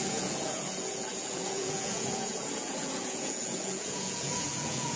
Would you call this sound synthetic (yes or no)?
yes